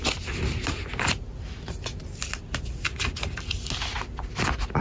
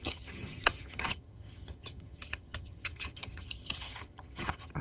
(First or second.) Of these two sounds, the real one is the first